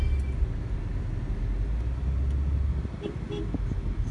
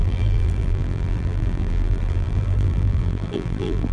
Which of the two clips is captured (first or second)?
first